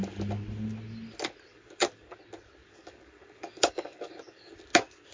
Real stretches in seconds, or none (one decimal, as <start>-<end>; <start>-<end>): 0.0-1.5; 2.2-2.6; 4.5-5.1

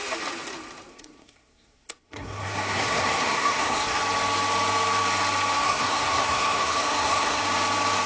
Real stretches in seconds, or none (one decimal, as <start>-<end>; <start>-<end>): 0.0-0.9; 4.0-5.6; 7.4-8.1